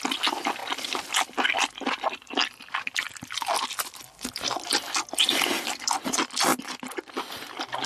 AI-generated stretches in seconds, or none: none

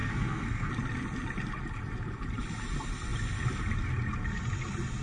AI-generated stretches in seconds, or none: 0.0-0.7 (codec, SNAC)

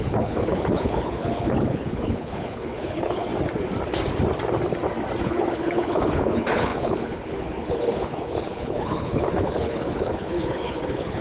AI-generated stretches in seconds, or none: 0.0-3.3 (codec, HILCodec); 5.2-11.2